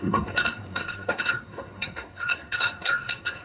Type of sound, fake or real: fake